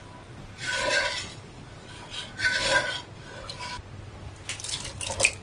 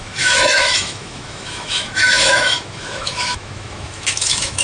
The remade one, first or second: second